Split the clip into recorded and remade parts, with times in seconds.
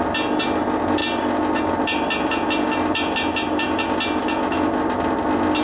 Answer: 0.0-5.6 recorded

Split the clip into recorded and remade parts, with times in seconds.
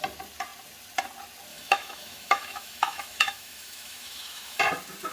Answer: 0.0-1.5 recorded; 1.5-4.6 remade; 4.6-5.1 recorded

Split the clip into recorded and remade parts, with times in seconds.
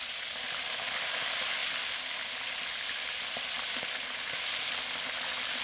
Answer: 0.0-1.6 remade; 1.6-2.1 recorded; 2.1-5.6 remade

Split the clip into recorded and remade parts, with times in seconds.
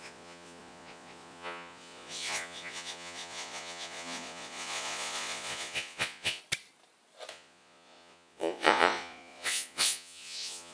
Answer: 0.0-6.4 remade; 6.4-7.3 recorded; 7.3-10.7 remade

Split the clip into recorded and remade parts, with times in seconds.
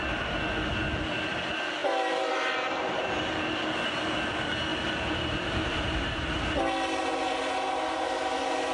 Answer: 0.0-4.7 recorded; 4.7-6.4 remade; 6.4-8.7 recorded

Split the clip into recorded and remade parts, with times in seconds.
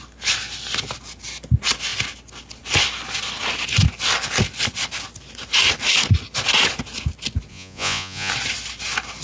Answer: 0.0-7.5 recorded; 7.5-8.3 remade; 8.3-9.2 recorded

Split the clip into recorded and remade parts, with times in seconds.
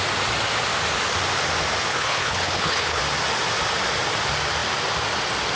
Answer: 0.0-1.9 recorded; 1.9-3.0 remade; 3.0-5.6 recorded